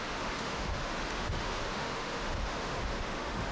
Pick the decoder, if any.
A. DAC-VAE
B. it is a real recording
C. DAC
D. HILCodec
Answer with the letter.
A